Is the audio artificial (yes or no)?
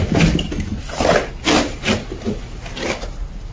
yes